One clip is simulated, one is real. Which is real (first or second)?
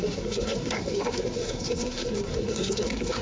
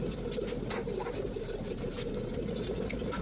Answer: second